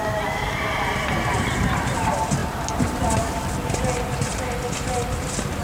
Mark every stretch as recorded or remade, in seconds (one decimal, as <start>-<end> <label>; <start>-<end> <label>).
0.0-5.6 recorded